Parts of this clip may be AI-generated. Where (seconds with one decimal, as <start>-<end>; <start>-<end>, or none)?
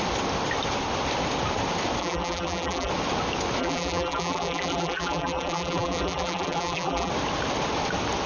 2.0-2.9; 3.6-7.1